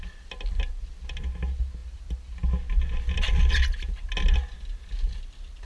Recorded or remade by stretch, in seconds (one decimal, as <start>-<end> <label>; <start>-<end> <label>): 0.0-5.7 recorded